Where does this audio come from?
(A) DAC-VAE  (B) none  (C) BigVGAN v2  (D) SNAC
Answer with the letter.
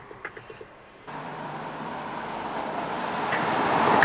C